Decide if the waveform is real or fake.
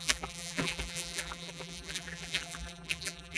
fake